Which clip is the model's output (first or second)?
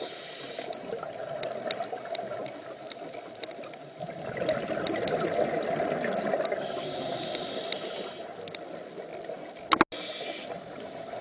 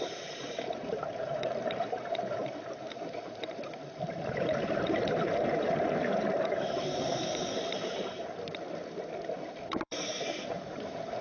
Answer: second